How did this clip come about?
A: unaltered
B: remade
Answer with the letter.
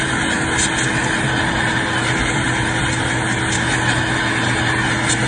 A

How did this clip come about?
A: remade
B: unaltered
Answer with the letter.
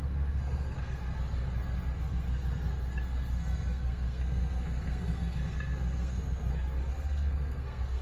A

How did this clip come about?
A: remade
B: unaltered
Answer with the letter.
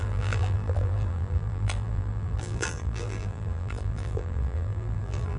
A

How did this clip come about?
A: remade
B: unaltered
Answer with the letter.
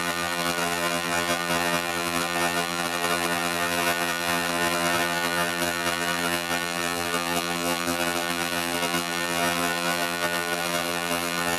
A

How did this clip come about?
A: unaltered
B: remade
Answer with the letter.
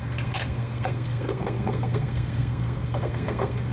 B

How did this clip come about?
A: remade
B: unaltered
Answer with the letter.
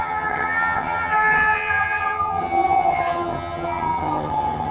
A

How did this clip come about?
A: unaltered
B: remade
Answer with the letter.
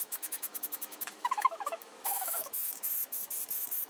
B